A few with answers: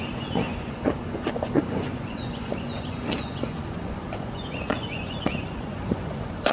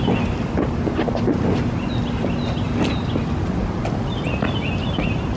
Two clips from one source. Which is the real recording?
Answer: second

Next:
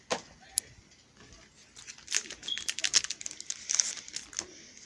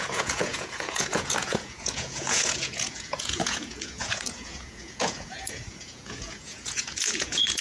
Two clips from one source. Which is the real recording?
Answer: first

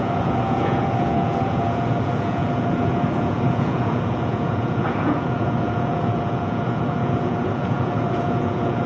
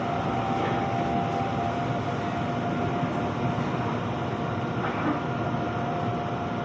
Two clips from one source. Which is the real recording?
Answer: second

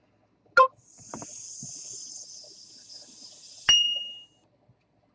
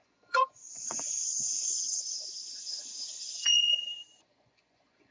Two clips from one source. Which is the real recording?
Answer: first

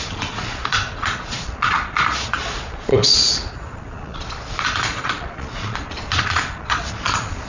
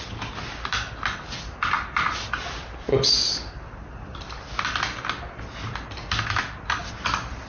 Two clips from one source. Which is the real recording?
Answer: second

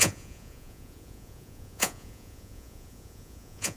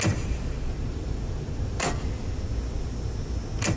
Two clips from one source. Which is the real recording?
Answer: second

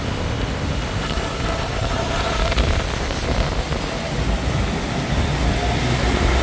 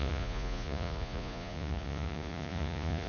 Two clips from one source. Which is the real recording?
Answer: first